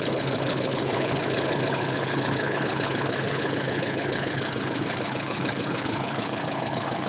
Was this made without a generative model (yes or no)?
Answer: no